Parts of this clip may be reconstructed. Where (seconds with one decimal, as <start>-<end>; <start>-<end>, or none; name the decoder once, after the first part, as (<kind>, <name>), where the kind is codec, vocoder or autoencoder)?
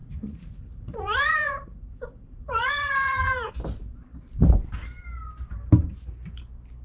0.0-3.5 (vocoder, Vocos)